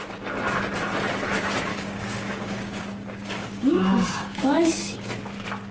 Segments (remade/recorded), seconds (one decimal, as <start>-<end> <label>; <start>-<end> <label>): 0.0-1.7 recorded; 1.7-5.1 remade; 5.1-5.7 recorded